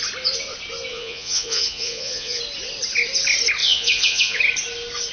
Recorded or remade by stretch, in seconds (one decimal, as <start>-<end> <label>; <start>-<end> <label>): 0.0-0.9 recorded; 0.9-2.4 remade; 2.4-3.6 recorded; 3.6-4.4 remade; 4.4-5.1 recorded